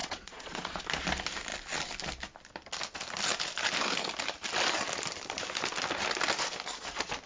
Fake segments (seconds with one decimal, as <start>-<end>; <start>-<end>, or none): 0.0-0.8